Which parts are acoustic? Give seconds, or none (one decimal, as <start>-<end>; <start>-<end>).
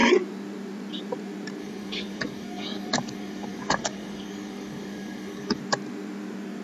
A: 0.0-1.6; 5.6-6.6